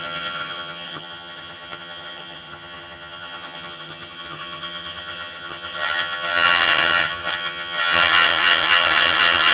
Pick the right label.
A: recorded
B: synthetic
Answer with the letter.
B